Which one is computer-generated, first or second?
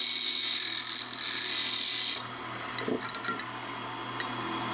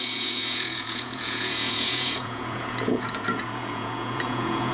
second